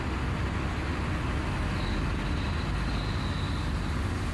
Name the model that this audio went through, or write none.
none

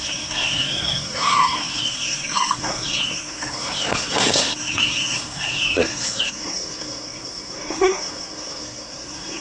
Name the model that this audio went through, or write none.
codec, SNAC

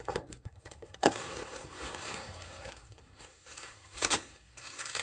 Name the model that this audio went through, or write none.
codec, SNAC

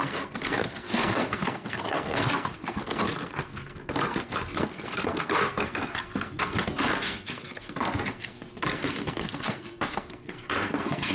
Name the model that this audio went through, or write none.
codec, SNAC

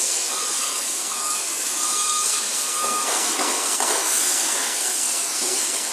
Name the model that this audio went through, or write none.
codec, SNAC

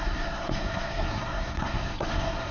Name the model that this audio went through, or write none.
codec, SNAC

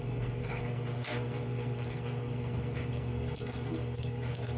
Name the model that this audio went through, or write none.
codec, SNAC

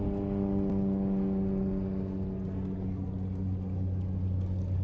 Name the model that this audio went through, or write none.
none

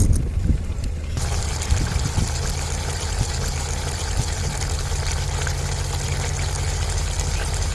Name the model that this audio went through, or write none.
none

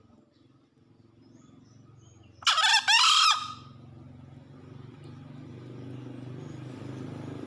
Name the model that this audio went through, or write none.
none